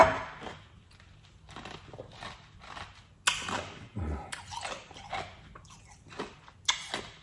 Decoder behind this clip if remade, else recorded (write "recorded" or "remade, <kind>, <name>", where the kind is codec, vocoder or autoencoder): recorded